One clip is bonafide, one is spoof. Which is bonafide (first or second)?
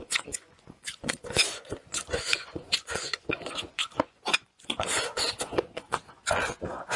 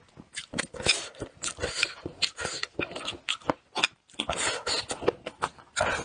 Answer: second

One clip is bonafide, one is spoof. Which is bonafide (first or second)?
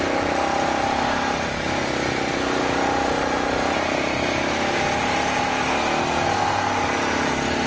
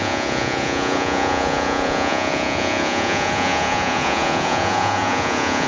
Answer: first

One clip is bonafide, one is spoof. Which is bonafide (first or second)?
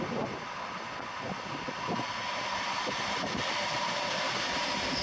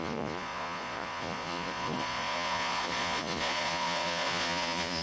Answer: first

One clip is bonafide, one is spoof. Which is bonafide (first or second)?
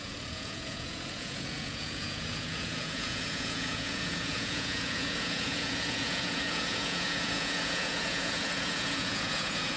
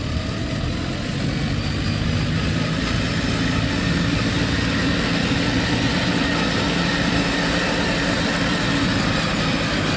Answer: second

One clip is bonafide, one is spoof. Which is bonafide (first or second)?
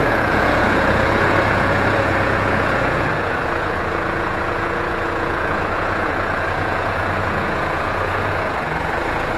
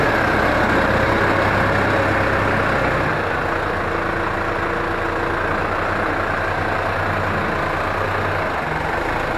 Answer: second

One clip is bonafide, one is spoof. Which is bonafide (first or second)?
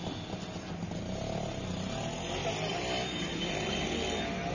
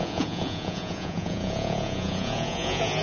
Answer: first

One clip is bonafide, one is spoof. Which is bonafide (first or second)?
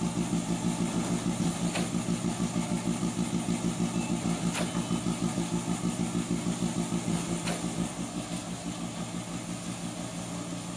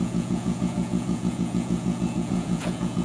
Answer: first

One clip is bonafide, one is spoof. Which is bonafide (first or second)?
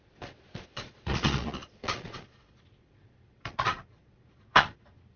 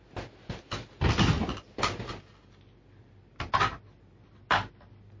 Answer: second